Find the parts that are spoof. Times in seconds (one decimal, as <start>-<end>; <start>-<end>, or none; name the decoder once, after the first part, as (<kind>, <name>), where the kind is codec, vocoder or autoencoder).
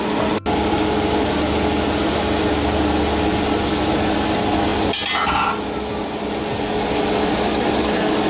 none